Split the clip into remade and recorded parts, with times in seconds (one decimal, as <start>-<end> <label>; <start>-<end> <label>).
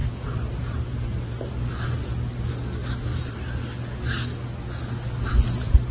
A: 0.0-1.5 remade; 1.5-3.1 recorded; 3.1-3.6 remade; 3.6-5.9 recorded